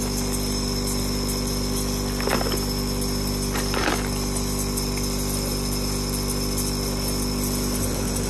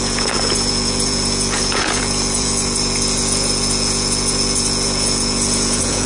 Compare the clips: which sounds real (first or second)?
first